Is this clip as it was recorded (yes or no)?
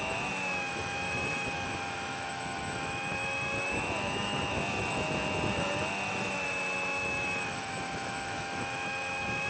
no